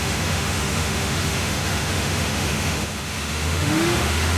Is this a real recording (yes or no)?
no